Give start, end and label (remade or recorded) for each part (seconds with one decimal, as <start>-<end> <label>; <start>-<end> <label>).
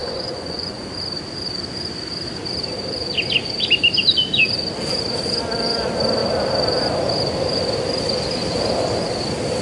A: 0.0-0.9 remade; 0.9-9.6 recorded